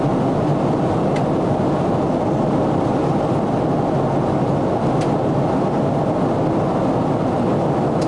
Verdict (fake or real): real